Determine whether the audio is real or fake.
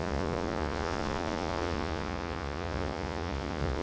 fake